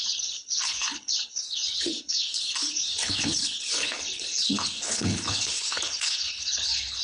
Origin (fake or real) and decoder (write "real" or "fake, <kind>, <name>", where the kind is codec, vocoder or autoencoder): fake, codec, HILCodec